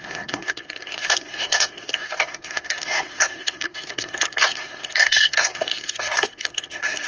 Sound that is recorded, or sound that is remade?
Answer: remade